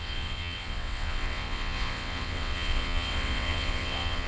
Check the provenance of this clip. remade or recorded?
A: remade